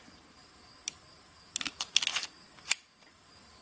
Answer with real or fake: real